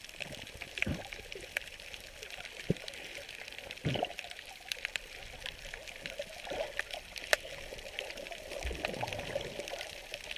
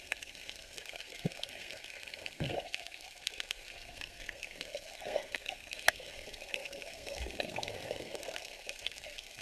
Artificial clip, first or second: second